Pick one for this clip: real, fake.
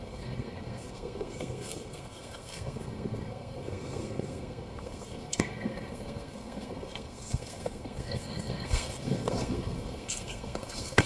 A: fake